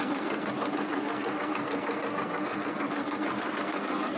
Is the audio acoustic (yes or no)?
no